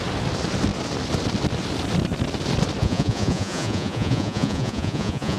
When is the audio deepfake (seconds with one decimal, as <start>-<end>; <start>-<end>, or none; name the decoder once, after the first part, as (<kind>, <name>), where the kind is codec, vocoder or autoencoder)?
2.8-5.4 (vocoder, Vocos)